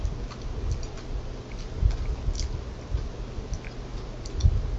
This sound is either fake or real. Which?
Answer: real